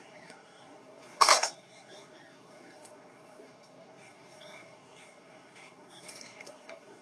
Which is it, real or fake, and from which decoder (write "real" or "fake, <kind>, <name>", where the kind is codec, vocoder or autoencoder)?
fake, codec, SNAC